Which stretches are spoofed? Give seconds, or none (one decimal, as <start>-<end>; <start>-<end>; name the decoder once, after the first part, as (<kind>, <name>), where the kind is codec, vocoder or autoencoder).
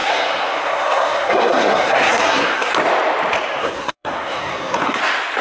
0.0-2.7 (codec, SNAC); 3.6-5.0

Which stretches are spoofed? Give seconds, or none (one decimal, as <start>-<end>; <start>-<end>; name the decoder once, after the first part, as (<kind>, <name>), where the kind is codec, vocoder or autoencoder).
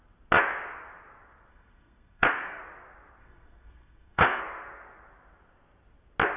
1.5-2.6 (codec, SNAC); 3.2-4.4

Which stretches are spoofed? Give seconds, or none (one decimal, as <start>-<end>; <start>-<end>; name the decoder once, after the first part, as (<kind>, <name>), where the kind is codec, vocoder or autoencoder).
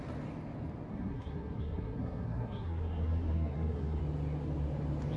0.9-4.0 (codec, SNAC)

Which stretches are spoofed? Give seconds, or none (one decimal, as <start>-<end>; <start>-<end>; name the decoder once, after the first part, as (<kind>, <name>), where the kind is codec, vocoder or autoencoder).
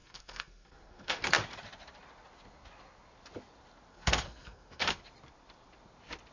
0.0-1.2 (codec, SNAC); 3.9-5.0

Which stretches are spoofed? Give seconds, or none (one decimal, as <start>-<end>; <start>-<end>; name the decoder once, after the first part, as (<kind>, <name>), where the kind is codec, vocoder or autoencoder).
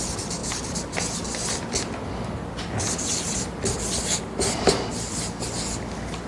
none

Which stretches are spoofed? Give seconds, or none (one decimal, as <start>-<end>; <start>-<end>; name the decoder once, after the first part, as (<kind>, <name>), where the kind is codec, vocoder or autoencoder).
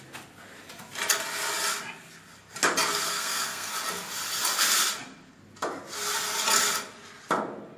3.1-3.7 (codec, SNAC)